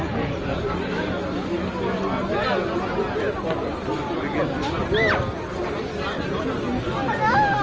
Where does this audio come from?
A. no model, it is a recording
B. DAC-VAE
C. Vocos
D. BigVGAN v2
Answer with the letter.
A